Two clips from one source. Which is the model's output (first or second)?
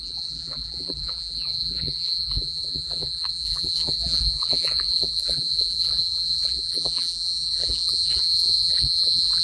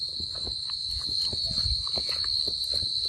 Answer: first